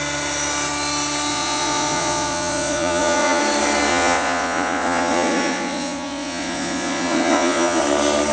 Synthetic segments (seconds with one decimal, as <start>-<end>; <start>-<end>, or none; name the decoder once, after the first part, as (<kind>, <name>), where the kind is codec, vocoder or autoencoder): 1.3-3.4 (vocoder, Vocos); 3.9-7.8